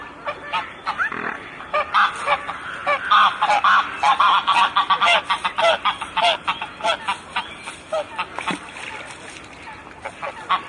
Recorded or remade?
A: recorded